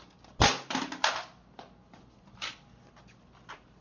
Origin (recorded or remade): recorded